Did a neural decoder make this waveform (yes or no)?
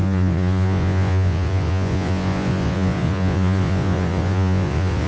yes